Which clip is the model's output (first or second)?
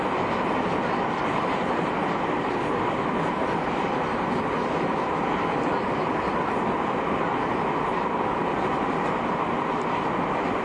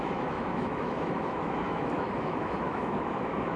second